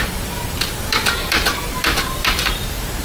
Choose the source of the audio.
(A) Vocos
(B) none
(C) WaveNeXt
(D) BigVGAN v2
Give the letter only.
D